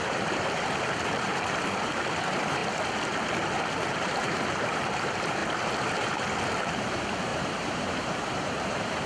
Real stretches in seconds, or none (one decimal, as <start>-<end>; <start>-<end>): 2.6-3.9; 5.4-6.0

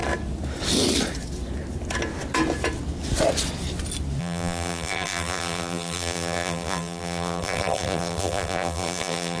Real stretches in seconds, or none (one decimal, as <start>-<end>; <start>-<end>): 0.0-4.2